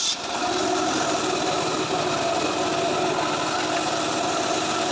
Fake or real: real